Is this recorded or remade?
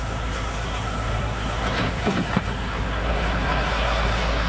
remade